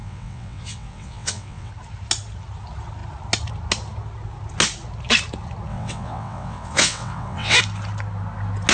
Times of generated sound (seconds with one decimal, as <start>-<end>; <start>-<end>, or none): 0.0-1.7; 5.7-7.6

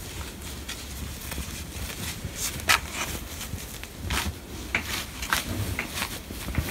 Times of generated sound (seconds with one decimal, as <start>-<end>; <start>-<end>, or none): none

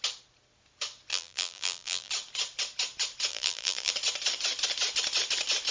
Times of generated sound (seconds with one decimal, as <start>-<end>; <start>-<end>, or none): 1.1-2.1; 3.3-3.9

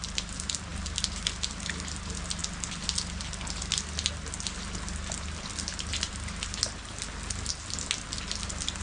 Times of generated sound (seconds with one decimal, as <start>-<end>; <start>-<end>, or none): none

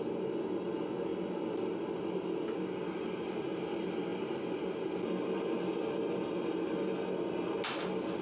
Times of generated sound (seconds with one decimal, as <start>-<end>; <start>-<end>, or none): none